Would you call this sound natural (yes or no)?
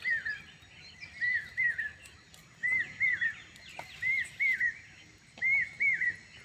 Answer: yes